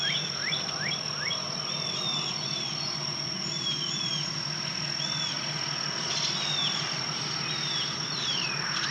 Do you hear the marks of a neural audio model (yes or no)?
no